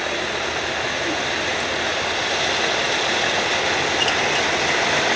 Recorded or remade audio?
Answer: recorded